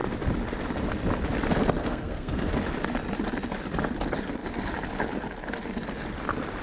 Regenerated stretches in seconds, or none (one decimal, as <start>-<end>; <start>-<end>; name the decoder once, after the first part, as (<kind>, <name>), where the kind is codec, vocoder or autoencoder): 1.8-2.5 (codec, SNAC)